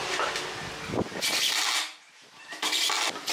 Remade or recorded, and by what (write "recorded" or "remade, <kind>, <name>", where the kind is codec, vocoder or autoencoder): recorded